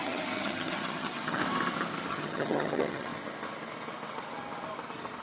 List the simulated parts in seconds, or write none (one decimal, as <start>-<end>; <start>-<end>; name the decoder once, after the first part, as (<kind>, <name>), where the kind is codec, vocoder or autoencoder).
0.0-1.4 (vocoder, HiFi-GAN); 2.1-3.1